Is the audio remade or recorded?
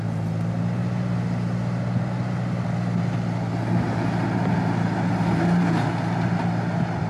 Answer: recorded